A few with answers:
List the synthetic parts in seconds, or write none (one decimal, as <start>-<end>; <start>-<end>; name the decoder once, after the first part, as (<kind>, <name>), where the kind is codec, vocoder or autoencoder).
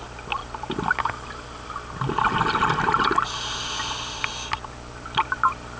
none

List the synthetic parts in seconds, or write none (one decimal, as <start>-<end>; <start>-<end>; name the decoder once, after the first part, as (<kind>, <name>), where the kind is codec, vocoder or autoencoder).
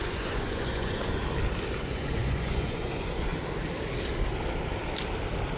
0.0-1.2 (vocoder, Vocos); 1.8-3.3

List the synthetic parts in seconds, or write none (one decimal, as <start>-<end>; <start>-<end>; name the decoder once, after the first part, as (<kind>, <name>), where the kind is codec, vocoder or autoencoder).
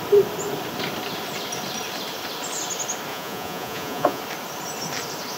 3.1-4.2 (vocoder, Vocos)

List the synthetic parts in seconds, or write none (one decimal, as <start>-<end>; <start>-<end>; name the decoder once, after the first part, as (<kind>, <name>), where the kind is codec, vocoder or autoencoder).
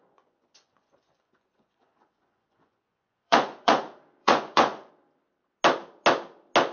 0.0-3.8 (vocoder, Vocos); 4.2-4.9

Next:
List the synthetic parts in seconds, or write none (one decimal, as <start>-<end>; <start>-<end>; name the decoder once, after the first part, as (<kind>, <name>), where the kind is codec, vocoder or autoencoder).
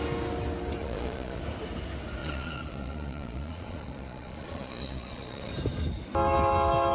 0.8-1.4 (vocoder, Vocos); 2.2-5.5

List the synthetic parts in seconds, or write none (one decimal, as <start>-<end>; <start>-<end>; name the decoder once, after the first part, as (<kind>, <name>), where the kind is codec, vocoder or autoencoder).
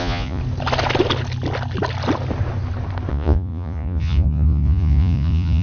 0.0-0.4 (vocoder, Vocos); 3.1-5.6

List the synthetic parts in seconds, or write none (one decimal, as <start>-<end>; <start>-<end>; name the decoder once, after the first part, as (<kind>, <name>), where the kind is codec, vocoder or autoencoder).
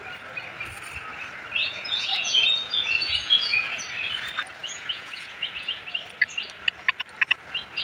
1.6-3.8 (vocoder, Vocos); 4.6-5.8